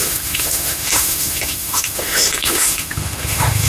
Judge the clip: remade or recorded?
remade